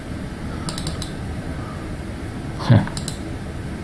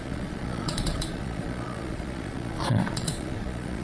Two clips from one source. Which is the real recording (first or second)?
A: first